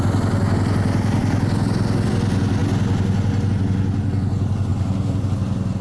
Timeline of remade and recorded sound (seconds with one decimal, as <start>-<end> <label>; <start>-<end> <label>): 0.0-4.7 recorded; 4.7-5.3 remade; 5.3-5.8 recorded